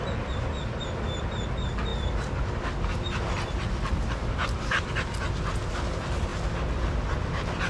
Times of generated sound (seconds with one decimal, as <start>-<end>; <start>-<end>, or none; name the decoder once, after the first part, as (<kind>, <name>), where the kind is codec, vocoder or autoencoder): 1.9-2.6 (vocoder, BigVGAN v2); 4.2-4.9